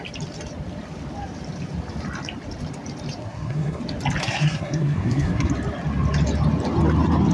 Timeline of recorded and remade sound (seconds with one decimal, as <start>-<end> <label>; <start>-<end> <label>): 0.0-3.2 recorded; 3.2-3.8 remade; 3.8-4.2 recorded; 4.2-5.5 remade; 5.5-7.3 recorded